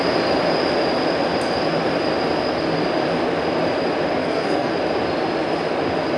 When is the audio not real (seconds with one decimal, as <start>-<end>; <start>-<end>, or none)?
4.2-4.7